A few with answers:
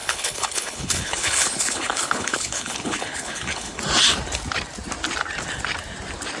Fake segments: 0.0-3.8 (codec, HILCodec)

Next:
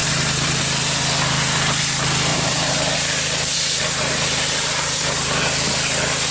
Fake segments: 0.0-0.6 (vocoder, BigVGAN v2); 2.3-5.4

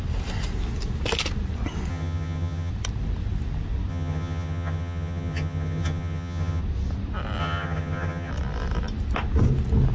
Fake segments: 1.9-2.7 (vocoder, HiFi-GAN); 3.9-6.6; 7.4-8.3

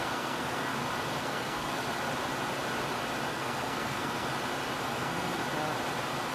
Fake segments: 0.0-0.7 (codec, SNAC); 1.2-1.8; 3.3-4.3; 4.8-5.4

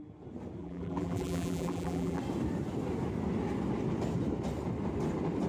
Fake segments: 0.6-2.2 (vocoder, BigVGAN v2)

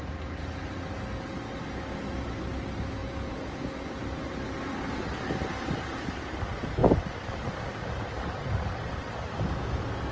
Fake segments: 3.0-4.0 (vocoder, Vocos)